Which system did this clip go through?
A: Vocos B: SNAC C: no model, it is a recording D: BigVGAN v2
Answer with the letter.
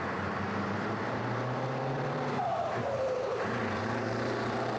D